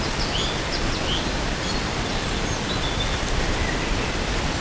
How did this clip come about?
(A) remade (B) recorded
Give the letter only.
B